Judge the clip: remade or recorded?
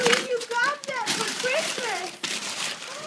remade